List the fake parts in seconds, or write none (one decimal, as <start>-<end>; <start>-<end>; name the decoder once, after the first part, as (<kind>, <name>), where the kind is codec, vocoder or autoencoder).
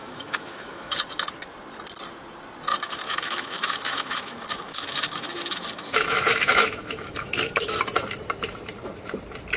0.0-1.0 (autoencoder, DAC-VAE); 2.7-7.8